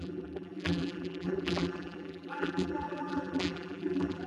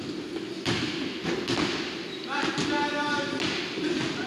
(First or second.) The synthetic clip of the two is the first